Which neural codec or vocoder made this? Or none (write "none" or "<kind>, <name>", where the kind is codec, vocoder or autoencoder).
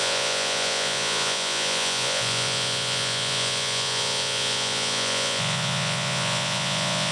vocoder, Vocos